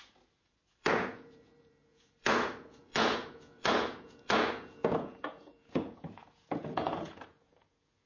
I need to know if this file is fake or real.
fake